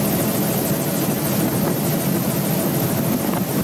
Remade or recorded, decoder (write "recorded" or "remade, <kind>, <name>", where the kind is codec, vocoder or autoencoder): recorded